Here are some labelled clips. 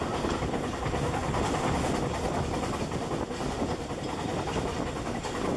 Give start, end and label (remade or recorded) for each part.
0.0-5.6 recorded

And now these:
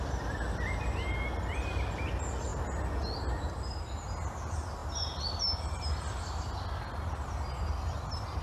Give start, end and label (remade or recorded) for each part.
0.0-8.4 recorded

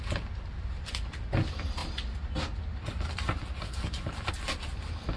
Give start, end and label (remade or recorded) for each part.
0.0-5.2 recorded